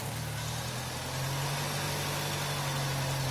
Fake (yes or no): no